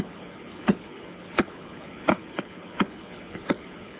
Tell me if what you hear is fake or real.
fake